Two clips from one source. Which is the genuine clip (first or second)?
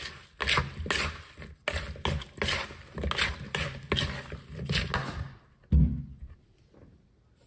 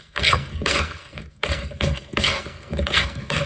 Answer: first